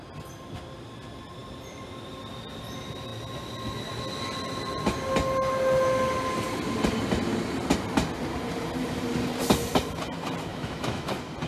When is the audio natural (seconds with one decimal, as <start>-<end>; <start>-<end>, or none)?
0.0-10.5; 11.1-11.5